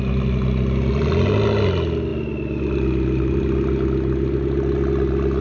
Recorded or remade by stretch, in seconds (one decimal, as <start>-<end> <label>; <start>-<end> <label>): 0.0-5.4 recorded